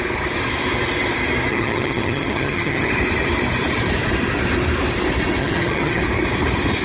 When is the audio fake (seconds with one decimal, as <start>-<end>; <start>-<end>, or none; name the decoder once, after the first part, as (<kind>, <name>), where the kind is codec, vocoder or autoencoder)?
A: 1.5-2.9 (vocoder, HiFi-GAN); 5.4-6.0